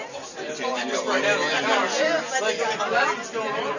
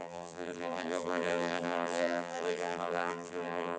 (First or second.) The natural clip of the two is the first